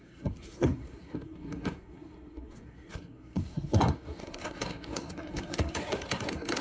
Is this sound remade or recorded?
remade